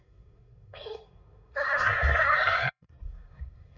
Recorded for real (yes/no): no